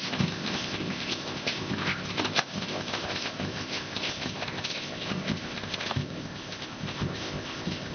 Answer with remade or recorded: remade